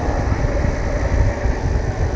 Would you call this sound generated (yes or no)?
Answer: no